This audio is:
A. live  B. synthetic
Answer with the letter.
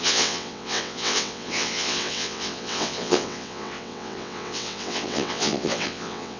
B